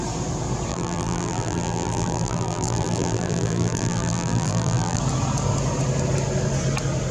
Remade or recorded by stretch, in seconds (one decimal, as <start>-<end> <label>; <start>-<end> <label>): 0.0-0.7 recorded; 0.7-5.0 remade; 5.0-7.1 recorded